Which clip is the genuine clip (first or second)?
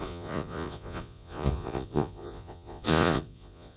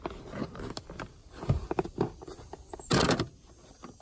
second